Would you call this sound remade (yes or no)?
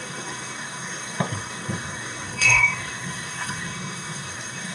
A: yes